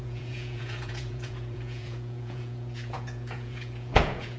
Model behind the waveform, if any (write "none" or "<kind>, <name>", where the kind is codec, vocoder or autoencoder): vocoder, Vocos